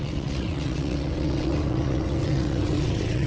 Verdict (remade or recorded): remade